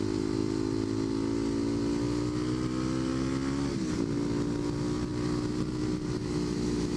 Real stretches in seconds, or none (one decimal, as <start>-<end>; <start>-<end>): 0.0-6.2